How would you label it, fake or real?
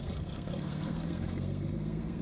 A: fake